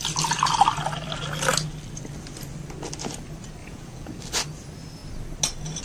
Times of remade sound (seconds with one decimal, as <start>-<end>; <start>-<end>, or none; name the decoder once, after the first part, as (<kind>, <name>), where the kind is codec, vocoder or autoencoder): 3.6-4.1 (vocoder, Vocos)